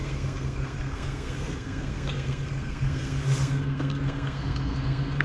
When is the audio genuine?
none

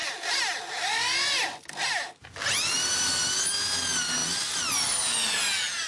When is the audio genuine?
0.0-5.9

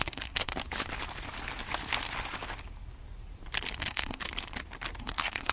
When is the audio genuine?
0.5-3.8; 4.2-5.0

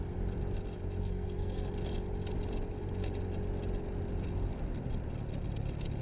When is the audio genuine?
0.0-1.0; 1.7-6.0

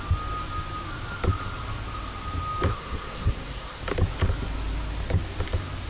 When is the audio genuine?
0.0-2.7; 3.8-5.9

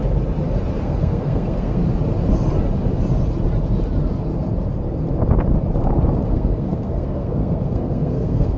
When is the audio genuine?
0.0-0.8; 1.8-6.3

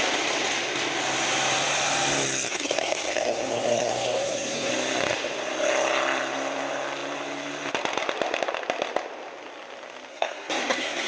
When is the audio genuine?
0.0-2.5; 4.7-10.1

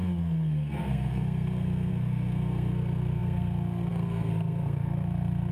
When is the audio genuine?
none